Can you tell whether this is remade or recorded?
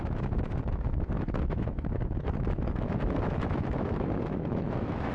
remade